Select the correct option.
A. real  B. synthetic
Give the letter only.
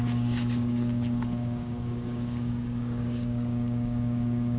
B